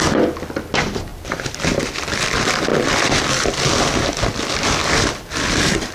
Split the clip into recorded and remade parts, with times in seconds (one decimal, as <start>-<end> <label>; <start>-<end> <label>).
0.0-1.1 recorded; 1.1-1.8 remade; 1.8-2.7 recorded; 2.7-3.2 remade; 3.2-5.9 recorded